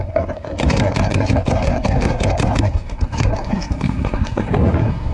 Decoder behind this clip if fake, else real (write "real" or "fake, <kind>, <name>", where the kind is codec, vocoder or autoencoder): fake, codec, SNAC